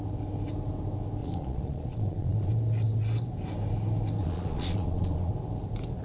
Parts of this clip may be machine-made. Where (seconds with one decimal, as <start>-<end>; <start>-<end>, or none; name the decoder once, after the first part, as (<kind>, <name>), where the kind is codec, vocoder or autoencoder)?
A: 1.2-2.5 (vocoder, Vocos); 4.2-5.3